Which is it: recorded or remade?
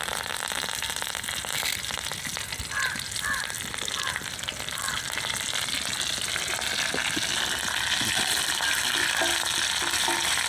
recorded